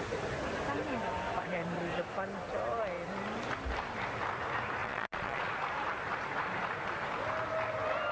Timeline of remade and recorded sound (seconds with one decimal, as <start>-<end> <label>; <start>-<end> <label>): 0.0-4.8 recorded; 4.8-5.5 remade; 5.5-8.1 recorded